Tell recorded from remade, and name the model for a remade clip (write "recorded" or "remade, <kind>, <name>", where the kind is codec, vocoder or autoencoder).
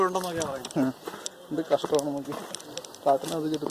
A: recorded